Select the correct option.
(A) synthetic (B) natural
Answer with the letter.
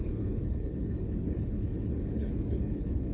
A